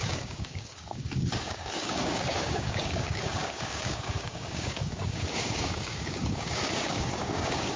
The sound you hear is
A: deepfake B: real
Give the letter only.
A